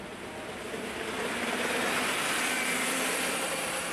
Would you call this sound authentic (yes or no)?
no